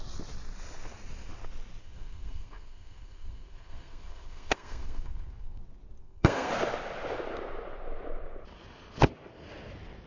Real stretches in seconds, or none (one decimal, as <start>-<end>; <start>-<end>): 0.0-1.8; 5.6-6.0; 6.5-10.1